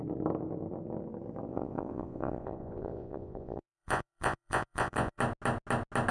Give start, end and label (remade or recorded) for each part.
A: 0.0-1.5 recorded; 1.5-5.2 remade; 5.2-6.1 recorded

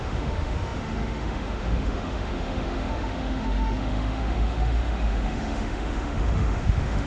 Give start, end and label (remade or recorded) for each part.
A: 0.0-7.1 remade

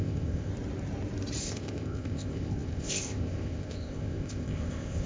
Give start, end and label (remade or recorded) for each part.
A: 0.0-0.5 remade; 0.5-1.4 recorded; 1.4-5.1 remade

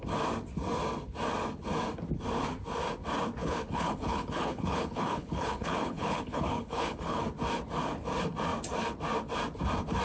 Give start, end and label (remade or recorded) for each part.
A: 0.0-3.4 recorded; 3.4-7.2 remade; 7.2-10.0 recorded

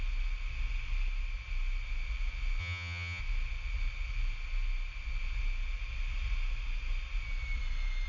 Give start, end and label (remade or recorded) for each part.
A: 0.0-2.6 recorded; 2.6-3.2 remade; 3.2-8.1 recorded

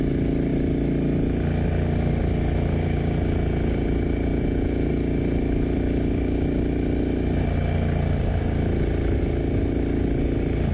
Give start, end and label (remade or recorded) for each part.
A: 0.0-4.3 recorded; 4.3-4.9 remade; 4.9-10.7 recorded